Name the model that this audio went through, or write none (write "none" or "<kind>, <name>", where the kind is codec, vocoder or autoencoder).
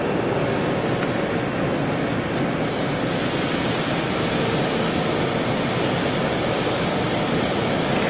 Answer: none